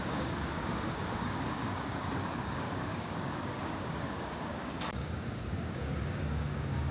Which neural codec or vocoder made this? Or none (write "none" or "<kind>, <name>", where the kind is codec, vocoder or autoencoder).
codec, DAC